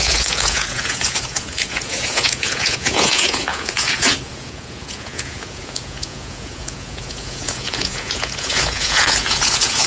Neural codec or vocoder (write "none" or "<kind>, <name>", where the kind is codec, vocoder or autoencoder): vocoder, Vocos